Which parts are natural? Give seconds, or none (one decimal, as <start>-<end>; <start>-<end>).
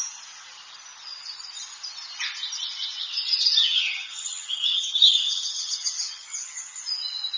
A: 0.0-3.6; 6.8-7.4